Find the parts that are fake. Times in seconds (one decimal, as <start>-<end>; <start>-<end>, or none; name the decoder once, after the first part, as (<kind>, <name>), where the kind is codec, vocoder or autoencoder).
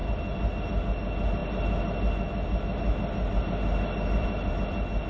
none